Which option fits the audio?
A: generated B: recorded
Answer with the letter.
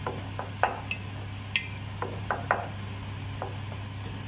B